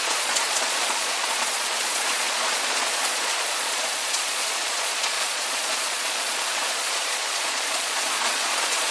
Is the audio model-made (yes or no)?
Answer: yes